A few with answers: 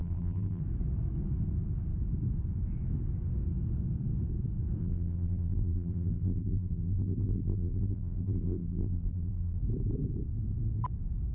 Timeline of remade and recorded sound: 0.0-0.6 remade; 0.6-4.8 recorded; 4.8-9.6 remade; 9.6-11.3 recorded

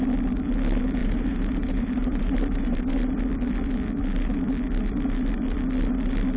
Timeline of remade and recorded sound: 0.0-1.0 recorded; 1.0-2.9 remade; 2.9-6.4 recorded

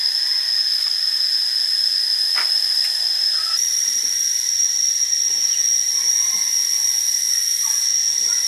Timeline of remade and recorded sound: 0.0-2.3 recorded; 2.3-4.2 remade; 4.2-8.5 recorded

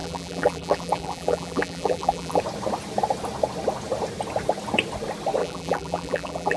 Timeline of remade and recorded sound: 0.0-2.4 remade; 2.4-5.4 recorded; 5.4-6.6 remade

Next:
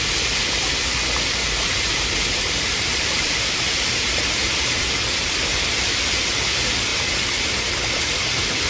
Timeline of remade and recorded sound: 0.0-1.4 recorded; 1.4-4.9 remade; 4.9-5.5 recorded; 5.5-6.2 remade; 6.2-8.7 recorded